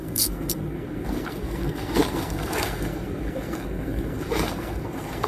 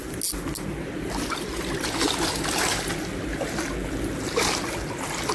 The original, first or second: second